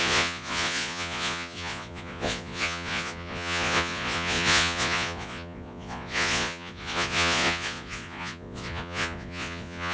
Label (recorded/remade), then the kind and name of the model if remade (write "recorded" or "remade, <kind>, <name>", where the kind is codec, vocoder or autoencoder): remade, vocoder, Vocos